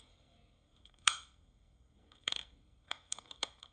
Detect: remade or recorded remade